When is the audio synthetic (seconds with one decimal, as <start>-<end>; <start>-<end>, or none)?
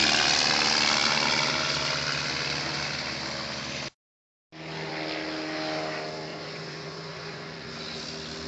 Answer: 6.3-8.0